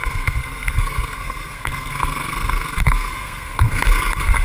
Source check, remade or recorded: remade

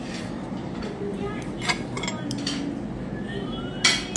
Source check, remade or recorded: recorded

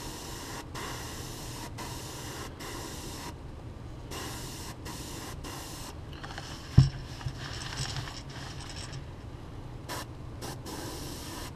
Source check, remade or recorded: recorded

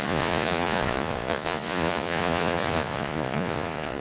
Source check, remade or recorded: remade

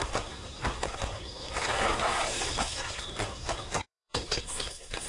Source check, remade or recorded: remade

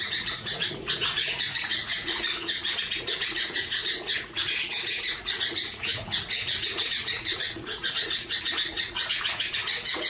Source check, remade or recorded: remade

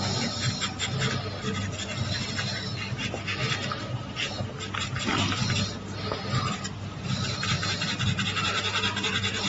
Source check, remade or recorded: recorded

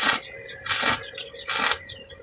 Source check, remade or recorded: recorded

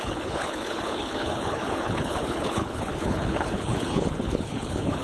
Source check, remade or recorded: remade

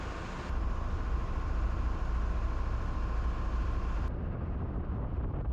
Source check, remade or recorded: recorded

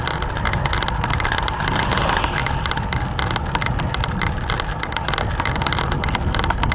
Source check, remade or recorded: recorded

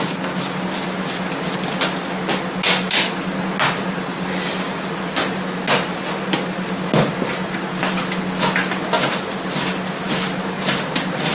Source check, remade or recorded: recorded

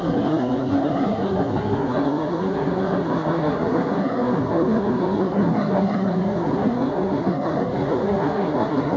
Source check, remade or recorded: remade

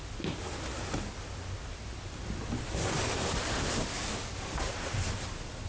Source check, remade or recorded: recorded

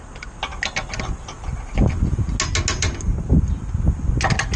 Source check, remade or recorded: recorded